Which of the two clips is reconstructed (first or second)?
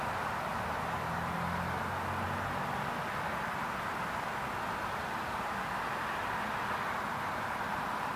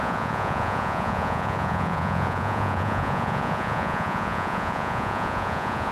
second